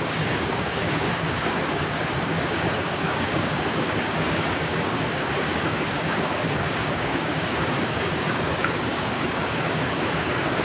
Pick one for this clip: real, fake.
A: fake